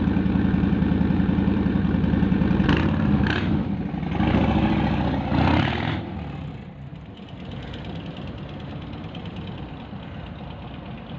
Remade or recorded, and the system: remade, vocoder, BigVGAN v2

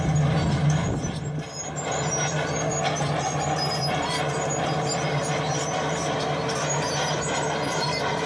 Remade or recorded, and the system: recorded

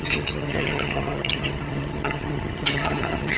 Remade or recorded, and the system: remade, vocoder, HiFi-GAN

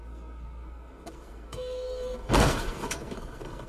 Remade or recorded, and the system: remade, codec, SNAC